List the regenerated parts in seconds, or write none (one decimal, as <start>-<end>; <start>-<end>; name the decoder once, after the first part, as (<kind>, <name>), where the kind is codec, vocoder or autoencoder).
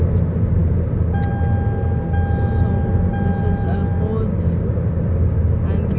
none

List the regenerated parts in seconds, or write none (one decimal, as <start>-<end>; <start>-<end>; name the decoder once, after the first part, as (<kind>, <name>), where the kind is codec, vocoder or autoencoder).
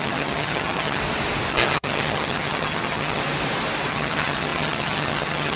0.0-1.0 (vocoder, HiFi-GAN); 1.5-3.2; 3.9-5.6